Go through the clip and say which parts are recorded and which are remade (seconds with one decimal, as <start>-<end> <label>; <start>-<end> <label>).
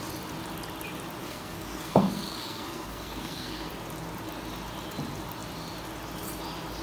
0.0-1.2 recorded; 1.2-3.7 remade; 3.7-6.8 recorded